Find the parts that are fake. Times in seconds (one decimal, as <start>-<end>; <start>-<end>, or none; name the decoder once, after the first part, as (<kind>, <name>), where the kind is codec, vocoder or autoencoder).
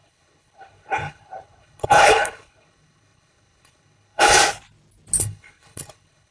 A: 0.0-4.4 (codec, HILCodec); 5.2-6.3